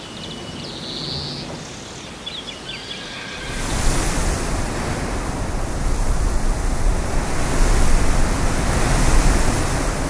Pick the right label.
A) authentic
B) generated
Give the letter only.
A